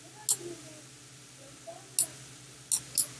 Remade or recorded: recorded